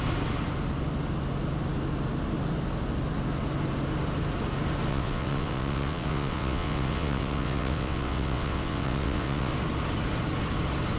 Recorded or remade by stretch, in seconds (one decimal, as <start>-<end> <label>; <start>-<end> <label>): 0.0-4.9 recorded; 4.9-9.5 remade; 9.5-11.0 recorded